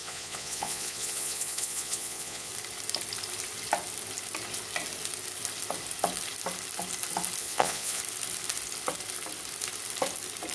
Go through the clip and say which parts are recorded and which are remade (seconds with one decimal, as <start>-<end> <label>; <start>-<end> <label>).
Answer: 0.0-2.5 remade; 2.5-7.4 recorded; 7.4-8.0 remade; 8.0-10.5 recorded